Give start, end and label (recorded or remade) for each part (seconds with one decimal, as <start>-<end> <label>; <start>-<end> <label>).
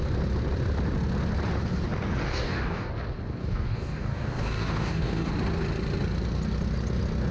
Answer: 0.0-2.2 recorded; 2.2-2.9 remade; 2.9-3.4 recorded; 3.4-5.3 remade; 5.3-7.3 recorded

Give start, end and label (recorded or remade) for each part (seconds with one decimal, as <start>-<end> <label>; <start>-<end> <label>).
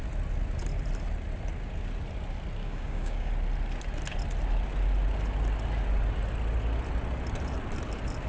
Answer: 0.0-2.6 recorded; 2.6-3.3 remade; 3.3-8.3 recorded